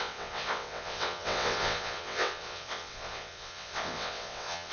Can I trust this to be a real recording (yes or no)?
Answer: no